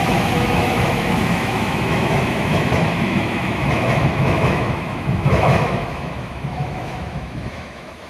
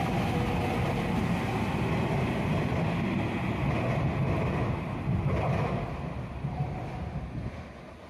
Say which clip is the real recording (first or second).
second